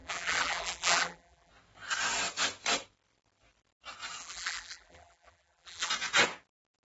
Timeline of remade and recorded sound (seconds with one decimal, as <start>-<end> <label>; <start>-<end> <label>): 0.0-1.5 remade; 1.5-4.2 recorded; 4.2-5.9 remade; 5.9-6.8 recorded